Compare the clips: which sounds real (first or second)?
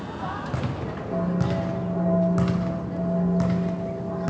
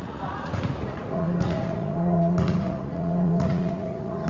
first